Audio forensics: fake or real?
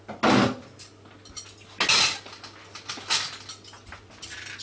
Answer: real